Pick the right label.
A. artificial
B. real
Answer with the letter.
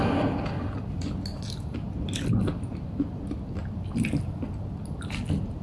B